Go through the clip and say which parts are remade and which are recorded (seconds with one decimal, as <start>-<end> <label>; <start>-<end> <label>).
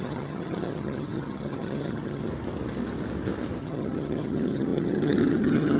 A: 0.0-2.3 remade; 2.3-3.6 recorded; 3.6-5.8 remade